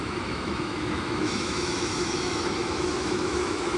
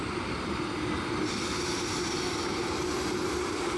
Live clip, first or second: second